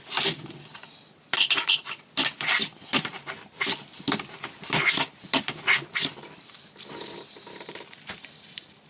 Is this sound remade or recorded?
recorded